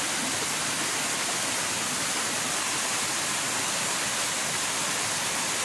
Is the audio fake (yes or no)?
no